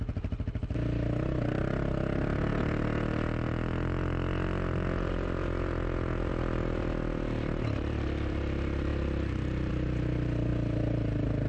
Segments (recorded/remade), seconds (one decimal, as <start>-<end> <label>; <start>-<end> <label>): 0.0-11.5 recorded

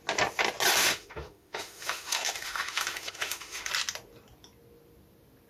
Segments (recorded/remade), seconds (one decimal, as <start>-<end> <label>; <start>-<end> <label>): 0.0-0.8 recorded; 0.8-3.7 remade; 3.7-5.5 recorded

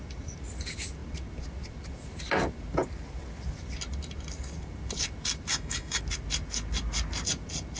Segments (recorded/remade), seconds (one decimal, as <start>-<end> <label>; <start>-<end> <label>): 0.0-5.5 recorded; 5.5-6.0 remade; 6.0-7.8 recorded